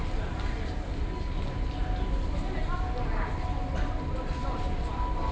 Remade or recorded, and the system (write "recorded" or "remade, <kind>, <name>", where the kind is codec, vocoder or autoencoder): recorded